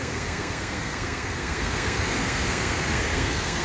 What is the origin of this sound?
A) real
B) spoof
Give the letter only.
B